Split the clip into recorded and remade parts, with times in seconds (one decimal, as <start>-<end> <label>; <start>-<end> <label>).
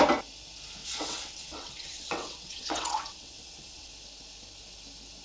0.0-0.8 recorded; 0.8-3.9 remade; 3.9-5.2 recorded